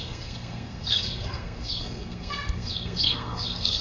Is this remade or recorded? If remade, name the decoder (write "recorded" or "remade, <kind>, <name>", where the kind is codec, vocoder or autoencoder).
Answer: remade, codec, SNAC